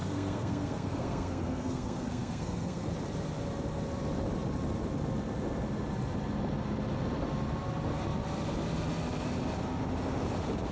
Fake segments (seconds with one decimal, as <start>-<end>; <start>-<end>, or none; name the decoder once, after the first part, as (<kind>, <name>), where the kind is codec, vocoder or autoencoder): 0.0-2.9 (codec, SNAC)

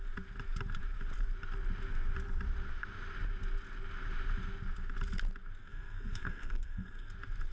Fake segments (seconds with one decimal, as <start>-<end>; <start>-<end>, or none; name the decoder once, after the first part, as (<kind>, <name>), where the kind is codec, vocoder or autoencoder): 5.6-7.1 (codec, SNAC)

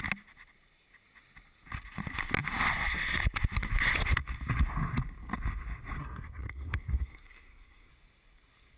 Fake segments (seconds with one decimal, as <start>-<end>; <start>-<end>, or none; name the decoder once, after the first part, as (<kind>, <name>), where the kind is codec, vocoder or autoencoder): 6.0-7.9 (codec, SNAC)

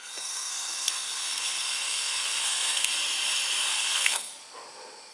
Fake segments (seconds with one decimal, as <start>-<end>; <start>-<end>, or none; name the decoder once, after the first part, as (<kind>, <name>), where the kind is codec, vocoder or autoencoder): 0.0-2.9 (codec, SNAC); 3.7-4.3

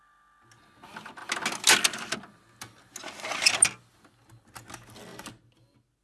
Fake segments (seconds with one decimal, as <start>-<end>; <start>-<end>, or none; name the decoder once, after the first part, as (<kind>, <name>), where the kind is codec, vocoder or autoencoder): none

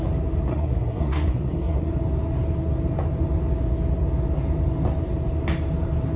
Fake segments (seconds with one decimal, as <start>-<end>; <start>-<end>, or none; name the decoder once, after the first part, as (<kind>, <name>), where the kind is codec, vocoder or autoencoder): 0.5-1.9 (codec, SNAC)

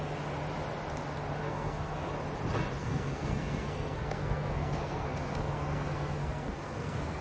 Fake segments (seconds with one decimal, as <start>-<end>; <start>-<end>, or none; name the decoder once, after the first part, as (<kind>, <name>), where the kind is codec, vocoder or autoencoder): 1.4-2.1 (codec, SNAC); 2.8-7.2

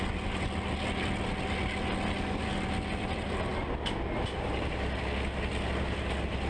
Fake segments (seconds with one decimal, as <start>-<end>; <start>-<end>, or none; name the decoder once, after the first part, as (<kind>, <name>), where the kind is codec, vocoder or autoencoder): none